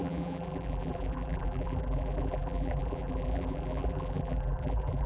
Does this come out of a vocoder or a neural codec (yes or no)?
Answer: yes